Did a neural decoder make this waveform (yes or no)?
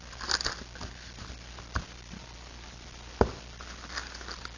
no